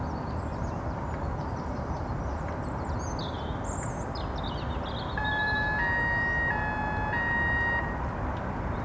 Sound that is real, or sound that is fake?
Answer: real